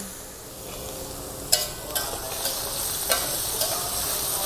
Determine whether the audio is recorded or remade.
recorded